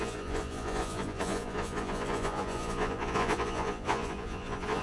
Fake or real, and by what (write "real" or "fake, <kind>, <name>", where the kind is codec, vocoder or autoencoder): fake, vocoder, Vocos